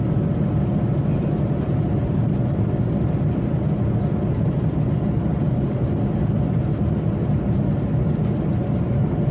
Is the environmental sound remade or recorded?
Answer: recorded